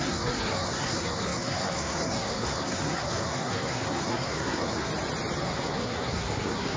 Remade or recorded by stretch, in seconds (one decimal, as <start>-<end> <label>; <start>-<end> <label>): 0.0-4.9 remade; 4.9-5.4 recorded; 5.4-6.8 remade